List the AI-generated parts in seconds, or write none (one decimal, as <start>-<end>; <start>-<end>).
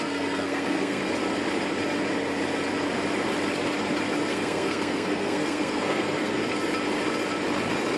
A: 0.0-1.0; 4.3-6.4